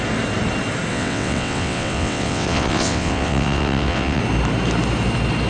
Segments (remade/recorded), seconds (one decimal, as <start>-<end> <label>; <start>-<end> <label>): 0.0-0.9 recorded; 0.9-4.2 remade; 4.2-5.5 recorded